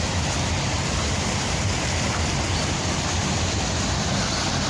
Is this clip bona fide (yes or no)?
no